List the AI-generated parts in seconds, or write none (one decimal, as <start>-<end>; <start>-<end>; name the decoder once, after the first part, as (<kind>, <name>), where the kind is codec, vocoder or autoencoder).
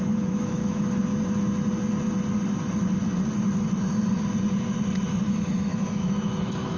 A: 0.0-1.1 (autoencoder, DAC-VAE); 5.2-6.8